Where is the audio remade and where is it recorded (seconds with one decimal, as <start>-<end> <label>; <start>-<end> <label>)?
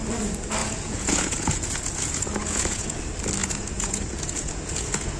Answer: 0.0-0.6 recorded; 0.6-3.0 remade; 3.0-3.4 recorded; 3.4-5.2 remade